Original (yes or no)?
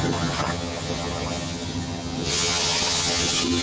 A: no